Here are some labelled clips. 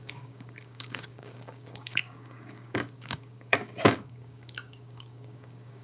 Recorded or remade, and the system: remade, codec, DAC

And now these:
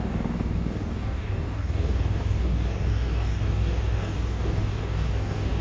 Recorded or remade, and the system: remade, codec, DAC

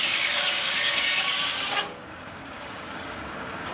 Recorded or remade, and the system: remade, codec, DAC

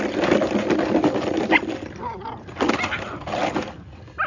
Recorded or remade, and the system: recorded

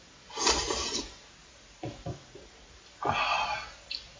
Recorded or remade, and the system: recorded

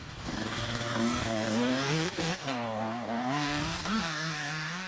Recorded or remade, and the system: remade, codec, DAC